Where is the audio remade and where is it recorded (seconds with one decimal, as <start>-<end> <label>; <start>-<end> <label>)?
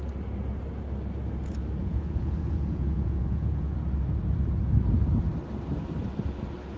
0.0-1.8 recorded; 1.8-3.8 remade; 3.8-6.8 recorded